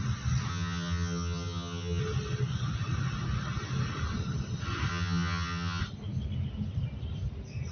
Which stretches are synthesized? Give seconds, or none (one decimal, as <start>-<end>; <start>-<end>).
0.5-2.0; 4.9-5.8